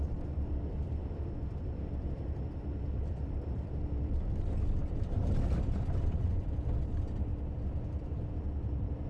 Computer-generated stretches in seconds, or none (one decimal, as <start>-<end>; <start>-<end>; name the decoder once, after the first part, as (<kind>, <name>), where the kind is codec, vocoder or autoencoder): 0.0-7.3 (vocoder, BigVGAN v2); 8.0-9.1

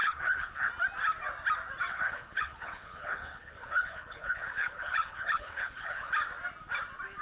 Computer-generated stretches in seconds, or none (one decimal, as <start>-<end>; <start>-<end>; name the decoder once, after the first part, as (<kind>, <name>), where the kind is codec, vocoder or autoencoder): 0.0-0.7 (codec, HILCodec); 1.9-6.1